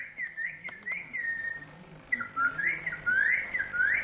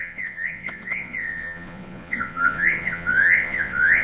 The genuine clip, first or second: first